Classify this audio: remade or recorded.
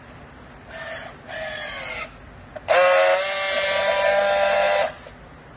recorded